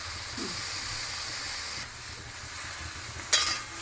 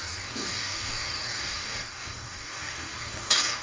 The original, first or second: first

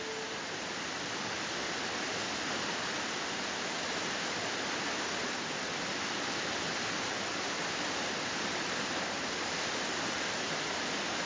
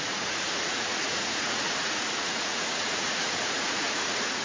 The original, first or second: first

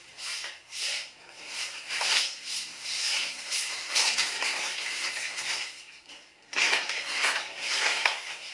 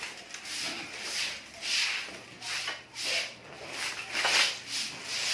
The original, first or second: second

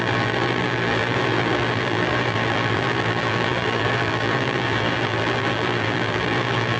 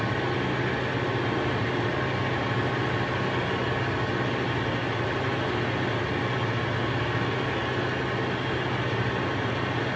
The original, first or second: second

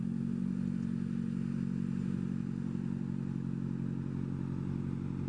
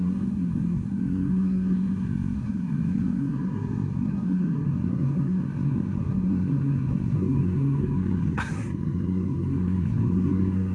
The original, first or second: first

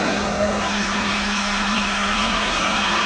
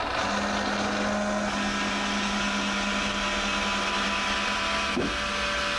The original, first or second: second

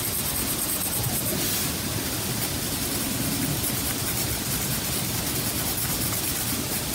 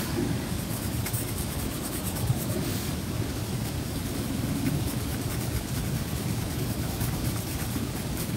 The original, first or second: first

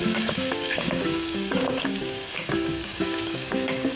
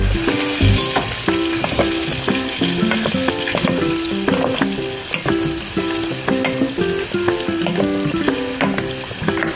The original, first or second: second